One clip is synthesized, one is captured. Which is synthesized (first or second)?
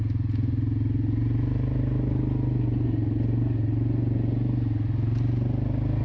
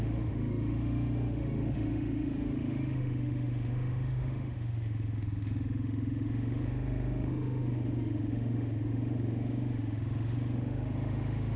second